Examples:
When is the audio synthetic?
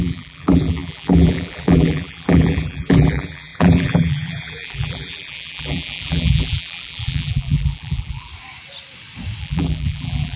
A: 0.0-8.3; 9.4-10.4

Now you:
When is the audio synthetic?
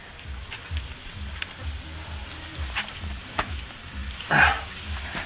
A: none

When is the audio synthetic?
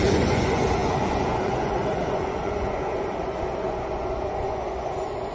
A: 0.0-5.3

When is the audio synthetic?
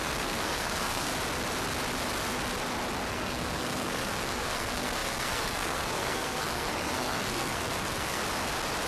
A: 0.0-1.1; 3.1-8.2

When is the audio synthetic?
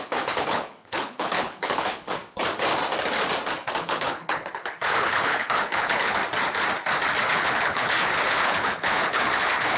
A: 0.0-2.2; 3.7-6.2; 7.2-9.8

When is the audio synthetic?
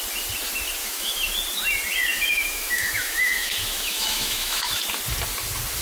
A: 0.8-1.3; 2.1-4.8